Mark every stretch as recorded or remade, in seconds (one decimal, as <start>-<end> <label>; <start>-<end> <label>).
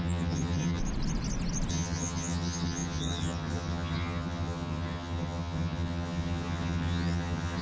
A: 0.0-0.8 remade; 0.8-1.7 recorded; 1.7-7.6 remade